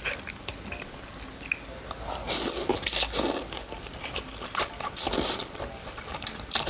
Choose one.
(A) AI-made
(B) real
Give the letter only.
B